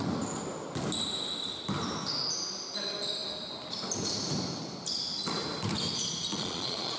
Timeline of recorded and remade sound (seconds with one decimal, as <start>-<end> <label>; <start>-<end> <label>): 0.0-6.3 recorded; 6.3-7.0 remade

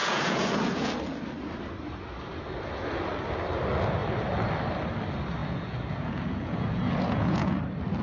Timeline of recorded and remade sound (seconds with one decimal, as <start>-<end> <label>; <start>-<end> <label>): 0.0-0.9 remade; 0.9-5.4 recorded; 5.4-7.6 remade; 7.6-8.0 recorded

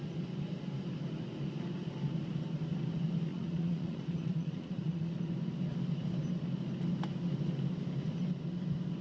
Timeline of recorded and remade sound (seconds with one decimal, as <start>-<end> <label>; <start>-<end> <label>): 0.0-3.3 recorded; 3.3-5.1 remade; 5.1-9.0 recorded

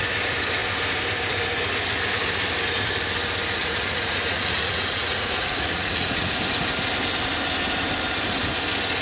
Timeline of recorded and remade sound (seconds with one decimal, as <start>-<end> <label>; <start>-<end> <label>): 0.0-3.6 recorded; 3.6-6.4 remade; 6.4-9.0 recorded

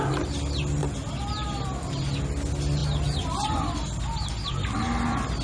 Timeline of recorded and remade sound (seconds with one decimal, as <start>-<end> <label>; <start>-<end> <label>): 0.0-5.4 recorded

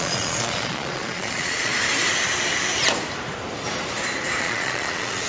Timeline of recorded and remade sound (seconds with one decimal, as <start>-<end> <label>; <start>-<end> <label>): 0.0-1.7 remade; 1.7-4.4 recorded; 4.4-5.3 remade

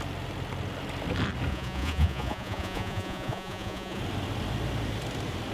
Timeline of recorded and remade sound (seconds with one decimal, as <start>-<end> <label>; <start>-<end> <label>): 0.0-1.5 recorded; 1.5-4.0 remade; 4.0-5.5 recorded

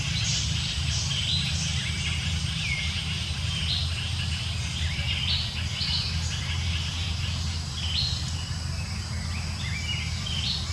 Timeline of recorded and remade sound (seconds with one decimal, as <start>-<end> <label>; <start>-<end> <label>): 0.0-10.7 recorded